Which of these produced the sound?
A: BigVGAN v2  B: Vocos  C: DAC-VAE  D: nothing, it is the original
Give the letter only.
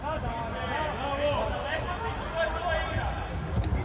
D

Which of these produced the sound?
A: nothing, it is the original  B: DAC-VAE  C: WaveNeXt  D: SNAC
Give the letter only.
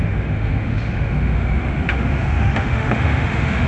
B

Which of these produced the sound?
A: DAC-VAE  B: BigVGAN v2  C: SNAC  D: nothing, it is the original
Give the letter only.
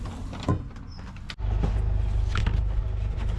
D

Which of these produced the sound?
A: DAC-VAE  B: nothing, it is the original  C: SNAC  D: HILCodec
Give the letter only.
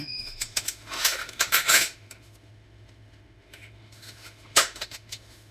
A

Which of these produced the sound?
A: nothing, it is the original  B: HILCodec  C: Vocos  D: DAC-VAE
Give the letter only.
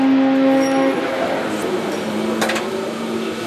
A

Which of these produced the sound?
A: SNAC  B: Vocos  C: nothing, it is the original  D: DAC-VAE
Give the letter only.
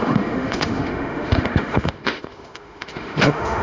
D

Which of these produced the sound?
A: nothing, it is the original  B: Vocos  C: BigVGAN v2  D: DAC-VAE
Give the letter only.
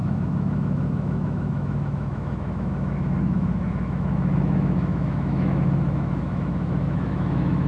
D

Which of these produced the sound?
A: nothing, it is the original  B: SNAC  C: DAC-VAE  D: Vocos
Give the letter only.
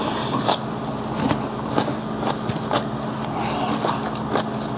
A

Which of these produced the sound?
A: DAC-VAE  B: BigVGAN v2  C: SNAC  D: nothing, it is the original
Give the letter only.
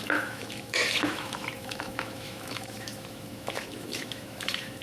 A